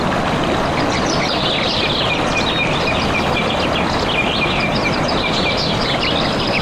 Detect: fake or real real